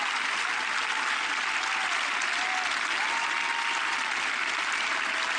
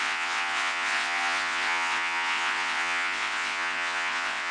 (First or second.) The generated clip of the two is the second